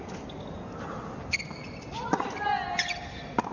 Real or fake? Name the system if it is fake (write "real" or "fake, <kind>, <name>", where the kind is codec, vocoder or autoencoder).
real